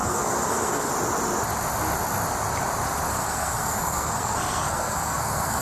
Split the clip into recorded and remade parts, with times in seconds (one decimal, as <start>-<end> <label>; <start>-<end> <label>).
0.0-0.9 remade; 0.9-3.1 recorded; 3.1-5.6 remade